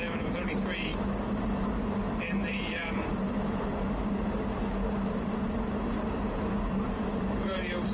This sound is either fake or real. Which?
fake